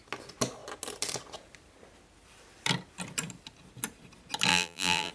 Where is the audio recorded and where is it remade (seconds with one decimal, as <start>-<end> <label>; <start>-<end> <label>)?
0.0-4.5 recorded; 4.5-5.1 remade